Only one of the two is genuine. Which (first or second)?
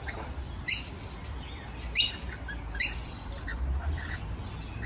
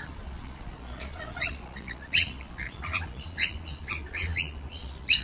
first